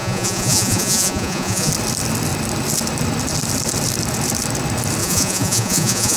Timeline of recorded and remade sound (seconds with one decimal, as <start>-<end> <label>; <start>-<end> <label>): 0.0-1.7 remade; 1.7-5.0 recorded; 5.0-6.2 remade